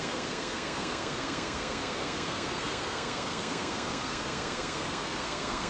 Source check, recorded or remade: remade